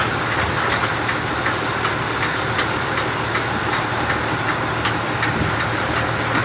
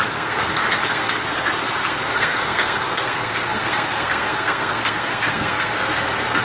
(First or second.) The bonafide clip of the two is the first